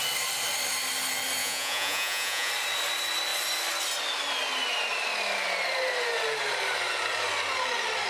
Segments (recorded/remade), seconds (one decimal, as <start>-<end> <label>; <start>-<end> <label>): 0.0-1.4 recorded; 1.4-2.5 remade; 2.5-8.1 recorded